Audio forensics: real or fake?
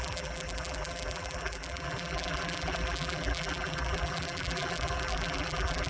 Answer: fake